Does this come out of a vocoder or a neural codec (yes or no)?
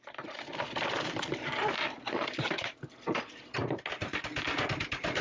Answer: no